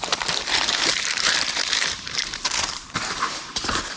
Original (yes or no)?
no